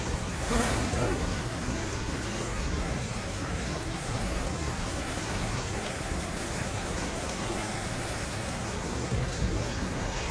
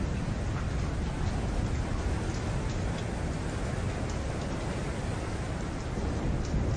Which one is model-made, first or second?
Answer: first